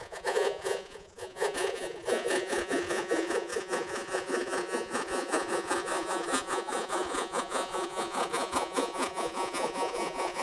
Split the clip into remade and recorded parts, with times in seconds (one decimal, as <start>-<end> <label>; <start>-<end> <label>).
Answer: 0.0-10.4 remade